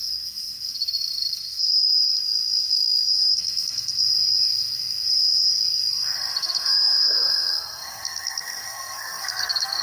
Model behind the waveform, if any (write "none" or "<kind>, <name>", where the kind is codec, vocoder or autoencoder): codec, SNAC